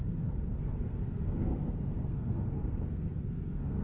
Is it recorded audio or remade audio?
remade